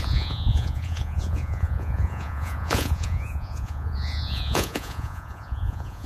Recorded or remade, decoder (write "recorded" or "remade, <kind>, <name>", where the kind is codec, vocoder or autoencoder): remade, vocoder, Vocos